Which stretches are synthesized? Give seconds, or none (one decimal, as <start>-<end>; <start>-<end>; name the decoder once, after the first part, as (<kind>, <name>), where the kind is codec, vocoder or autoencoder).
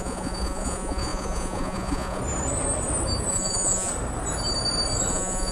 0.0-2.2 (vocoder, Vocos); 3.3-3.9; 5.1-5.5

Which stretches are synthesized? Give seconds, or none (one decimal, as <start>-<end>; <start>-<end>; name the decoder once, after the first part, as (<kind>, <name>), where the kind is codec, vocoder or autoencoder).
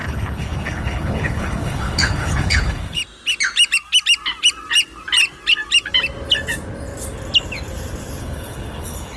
0.0-3.0 (codec, HILCodec); 8.2-9.2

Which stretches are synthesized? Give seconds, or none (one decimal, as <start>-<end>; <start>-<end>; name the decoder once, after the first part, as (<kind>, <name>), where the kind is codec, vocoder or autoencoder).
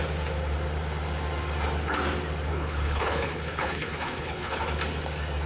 2.5-4.6 (codec, HILCodec)